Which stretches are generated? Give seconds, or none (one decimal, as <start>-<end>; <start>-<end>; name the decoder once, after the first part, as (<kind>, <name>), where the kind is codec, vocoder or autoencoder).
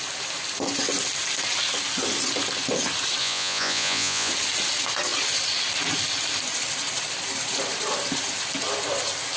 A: 3.2-4.3 (vocoder, Vocos)